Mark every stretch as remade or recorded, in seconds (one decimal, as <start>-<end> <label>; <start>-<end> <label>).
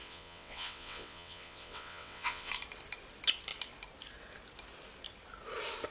0.0-2.5 remade; 2.5-5.9 recorded